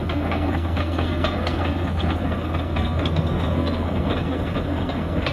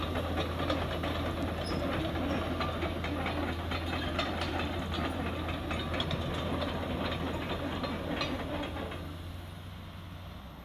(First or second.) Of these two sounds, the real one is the second